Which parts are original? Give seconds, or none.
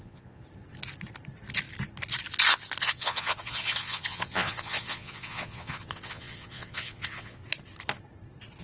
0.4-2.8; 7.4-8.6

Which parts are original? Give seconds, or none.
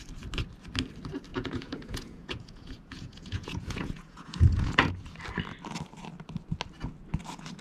0.0-1.3; 4.9-7.6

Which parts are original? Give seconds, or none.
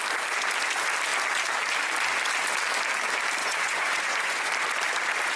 0.0-3.4; 4.5-5.4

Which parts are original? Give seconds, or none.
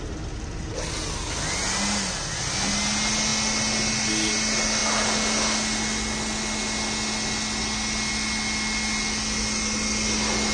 0.0-10.5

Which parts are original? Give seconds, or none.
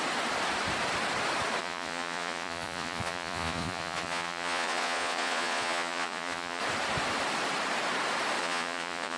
0.0-1.6; 6.6-8.4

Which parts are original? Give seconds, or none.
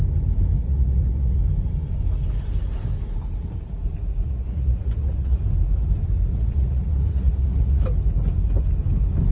0.0-0.6; 1.4-4.2; 5.4-6.3; 7.8-9.3